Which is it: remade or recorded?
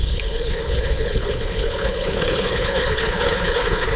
remade